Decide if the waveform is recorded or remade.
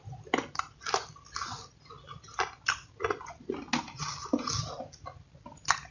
recorded